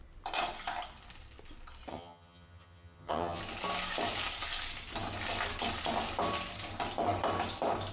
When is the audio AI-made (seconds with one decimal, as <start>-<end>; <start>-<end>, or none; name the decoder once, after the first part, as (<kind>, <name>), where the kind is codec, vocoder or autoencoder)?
1.9-3.4 (vocoder, HiFi-GAN)